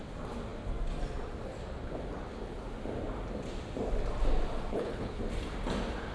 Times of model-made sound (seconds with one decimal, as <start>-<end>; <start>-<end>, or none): 4.7-5.2